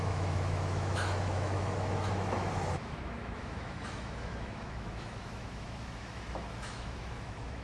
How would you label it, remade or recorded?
remade